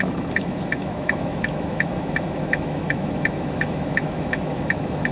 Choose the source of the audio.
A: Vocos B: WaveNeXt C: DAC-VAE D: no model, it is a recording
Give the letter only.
C